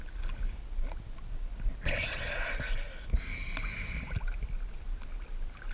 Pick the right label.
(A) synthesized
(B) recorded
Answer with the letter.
B